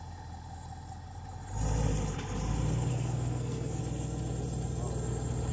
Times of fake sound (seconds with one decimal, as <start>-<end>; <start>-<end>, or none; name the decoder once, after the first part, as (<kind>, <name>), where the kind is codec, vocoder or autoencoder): 2.9-3.8 (codec, SNAC)